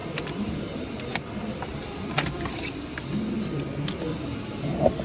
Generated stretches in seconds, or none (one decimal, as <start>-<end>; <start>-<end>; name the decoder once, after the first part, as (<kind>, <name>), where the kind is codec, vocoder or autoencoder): 0.0-3.0 (vocoder, BigVGAN v2); 4.1-4.6